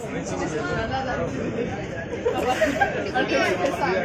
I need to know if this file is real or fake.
real